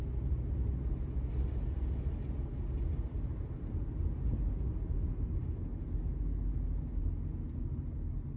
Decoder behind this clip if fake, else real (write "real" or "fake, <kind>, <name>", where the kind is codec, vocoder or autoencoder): real